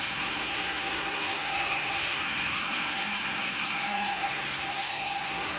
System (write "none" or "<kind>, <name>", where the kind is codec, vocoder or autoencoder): codec, SNAC